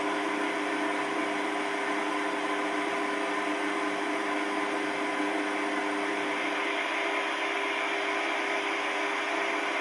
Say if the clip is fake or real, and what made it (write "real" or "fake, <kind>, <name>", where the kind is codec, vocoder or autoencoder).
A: real